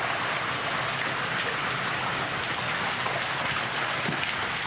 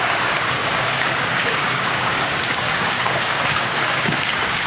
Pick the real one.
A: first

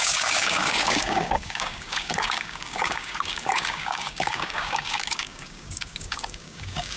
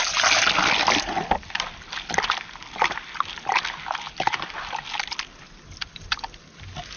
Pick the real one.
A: second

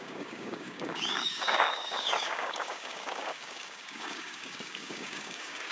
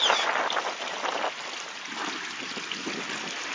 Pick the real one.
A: second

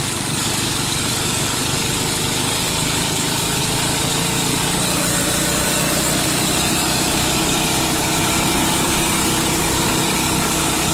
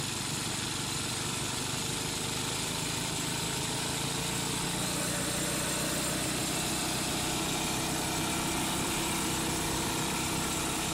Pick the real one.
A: second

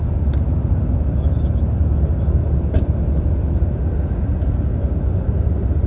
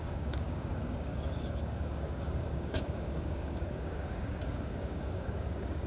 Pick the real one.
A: first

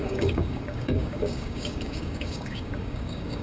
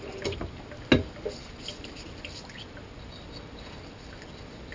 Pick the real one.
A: second